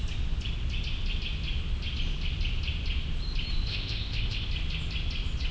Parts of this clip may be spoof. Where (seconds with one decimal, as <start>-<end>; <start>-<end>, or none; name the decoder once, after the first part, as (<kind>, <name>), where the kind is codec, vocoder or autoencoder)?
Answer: 3.7-4.5 (codec, ZipCodec)